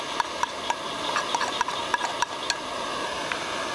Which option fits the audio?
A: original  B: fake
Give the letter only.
A